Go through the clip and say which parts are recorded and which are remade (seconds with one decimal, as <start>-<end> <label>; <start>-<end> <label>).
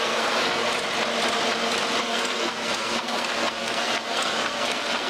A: 0.0-0.6 remade; 0.6-2.0 recorded; 2.0-5.1 remade